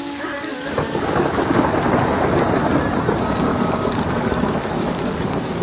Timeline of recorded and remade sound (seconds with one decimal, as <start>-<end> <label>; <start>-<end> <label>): 0.0-1.7 remade; 1.7-3.5 recorded; 3.5-5.6 remade